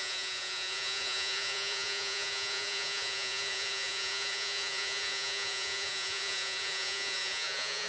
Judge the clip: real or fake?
fake